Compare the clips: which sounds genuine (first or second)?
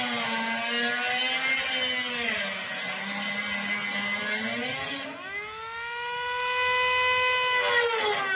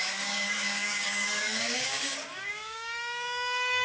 first